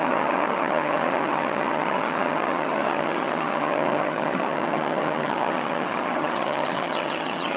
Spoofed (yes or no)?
yes